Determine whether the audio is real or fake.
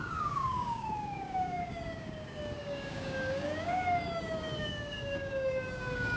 fake